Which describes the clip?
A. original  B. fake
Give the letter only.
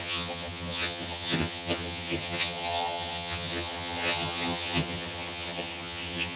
B